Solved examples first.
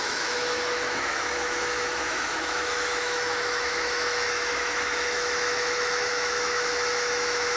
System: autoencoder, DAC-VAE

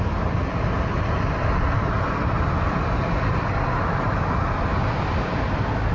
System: none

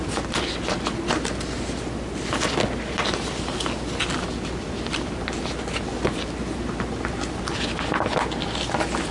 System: none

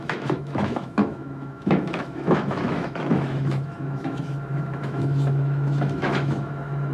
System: autoencoder, DAC-VAE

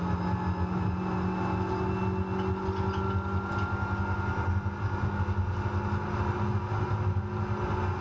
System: none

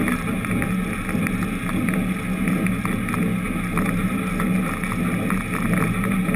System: none